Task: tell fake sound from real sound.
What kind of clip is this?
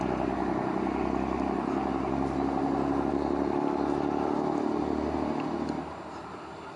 real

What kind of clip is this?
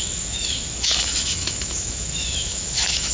fake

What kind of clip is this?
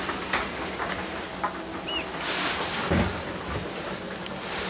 real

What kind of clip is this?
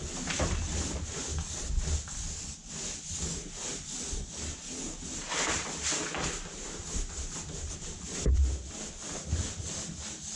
real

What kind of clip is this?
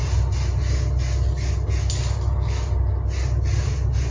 real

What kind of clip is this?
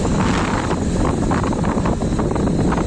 real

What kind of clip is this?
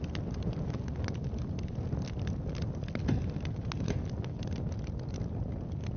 real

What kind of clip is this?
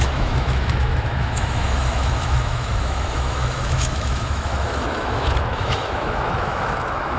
fake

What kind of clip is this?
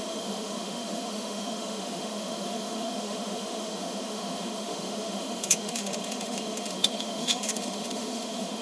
fake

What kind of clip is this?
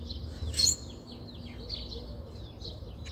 real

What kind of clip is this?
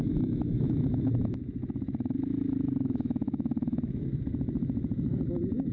fake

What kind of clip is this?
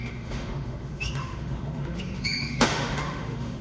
fake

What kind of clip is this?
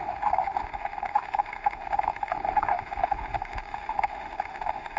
fake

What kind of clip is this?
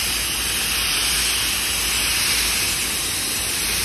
real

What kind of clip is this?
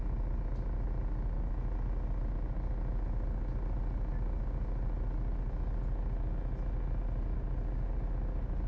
real